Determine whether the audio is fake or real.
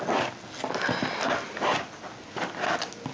real